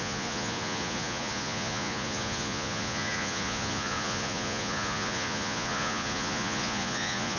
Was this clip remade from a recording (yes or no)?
yes